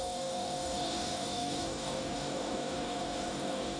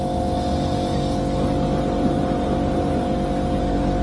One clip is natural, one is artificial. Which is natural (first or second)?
second